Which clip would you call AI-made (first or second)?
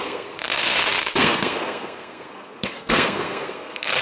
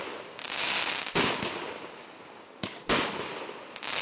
first